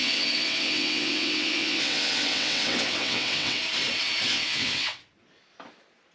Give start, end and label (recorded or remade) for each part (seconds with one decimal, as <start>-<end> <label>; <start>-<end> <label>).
0.0-3.6 remade; 3.6-4.3 recorded; 4.3-5.0 remade; 5.0-6.1 recorded